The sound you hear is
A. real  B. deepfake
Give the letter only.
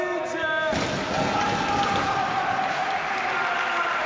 A